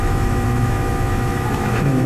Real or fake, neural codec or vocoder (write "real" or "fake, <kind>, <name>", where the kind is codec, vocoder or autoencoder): fake, autoencoder, DAC-VAE